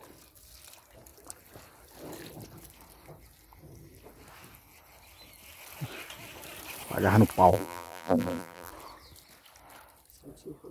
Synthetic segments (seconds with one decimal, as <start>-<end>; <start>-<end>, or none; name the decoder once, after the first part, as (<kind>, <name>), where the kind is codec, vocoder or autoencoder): 7.5-8.7 (vocoder, BigVGAN v2)